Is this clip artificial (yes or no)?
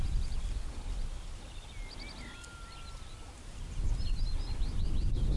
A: no